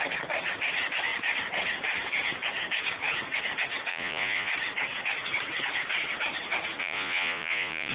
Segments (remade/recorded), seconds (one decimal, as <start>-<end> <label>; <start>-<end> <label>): 0.0-3.9 recorded; 3.9-4.5 remade; 4.5-6.8 recorded; 6.8-7.9 remade